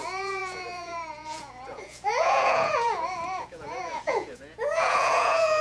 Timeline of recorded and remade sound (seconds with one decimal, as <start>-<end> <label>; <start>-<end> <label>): 0.0-5.6 remade